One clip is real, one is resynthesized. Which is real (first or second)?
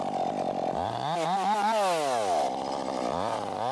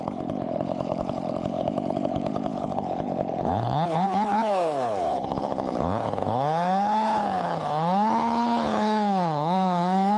first